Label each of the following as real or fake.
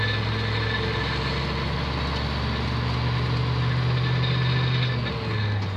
real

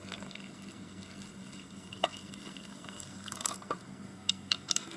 fake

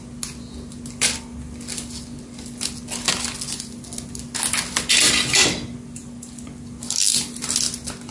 real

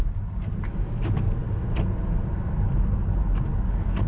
real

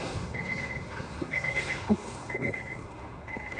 fake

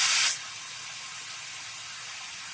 real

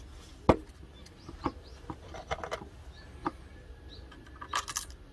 real